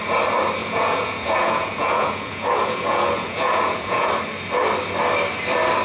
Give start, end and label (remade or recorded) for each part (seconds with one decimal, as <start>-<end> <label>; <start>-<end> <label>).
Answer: 0.0-0.6 recorded; 0.6-4.1 remade; 4.1-5.8 recorded